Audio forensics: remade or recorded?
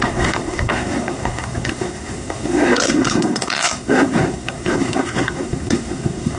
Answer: remade